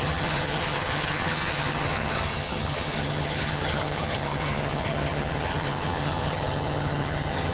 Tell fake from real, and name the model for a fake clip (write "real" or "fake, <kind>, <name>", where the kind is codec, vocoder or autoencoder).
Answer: fake, vocoder, HiFi-GAN